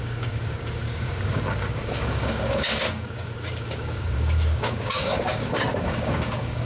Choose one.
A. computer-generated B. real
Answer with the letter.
A